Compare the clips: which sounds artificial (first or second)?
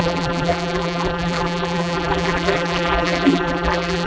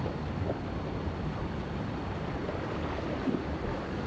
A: first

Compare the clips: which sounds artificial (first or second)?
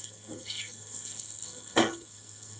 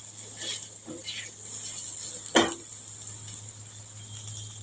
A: first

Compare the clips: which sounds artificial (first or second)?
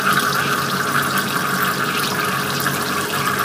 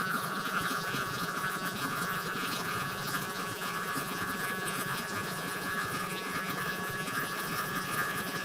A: second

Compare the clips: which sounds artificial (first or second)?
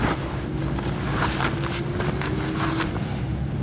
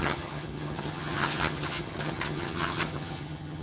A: second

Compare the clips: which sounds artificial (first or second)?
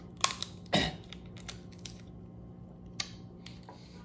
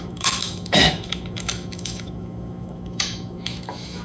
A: second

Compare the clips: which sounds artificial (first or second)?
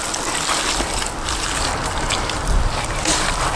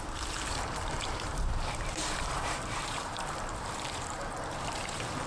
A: second